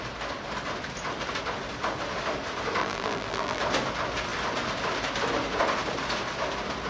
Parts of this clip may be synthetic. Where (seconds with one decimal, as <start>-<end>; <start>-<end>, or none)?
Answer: 2.8-3.6